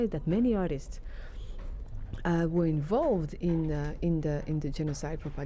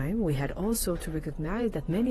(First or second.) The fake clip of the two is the second